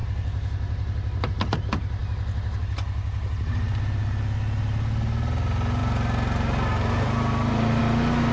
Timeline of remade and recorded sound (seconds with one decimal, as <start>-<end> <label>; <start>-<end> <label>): 0.0-8.3 recorded